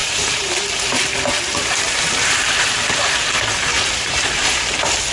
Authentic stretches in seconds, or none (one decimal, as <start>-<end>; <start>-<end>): 0.5-1.5; 2.5-3.7; 4.6-5.1